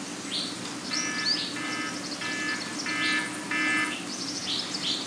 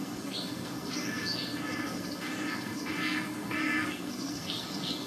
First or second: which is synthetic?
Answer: second